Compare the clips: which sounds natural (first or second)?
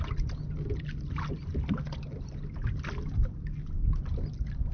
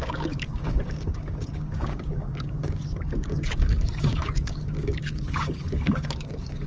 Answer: first